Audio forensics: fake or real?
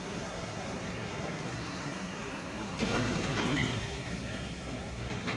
fake